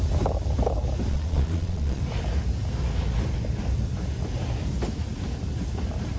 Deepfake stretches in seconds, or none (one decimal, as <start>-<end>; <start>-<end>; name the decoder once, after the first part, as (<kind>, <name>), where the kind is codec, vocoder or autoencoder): 1.1-2.0 (vocoder, Vocos)